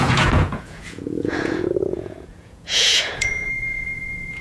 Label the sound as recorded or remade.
remade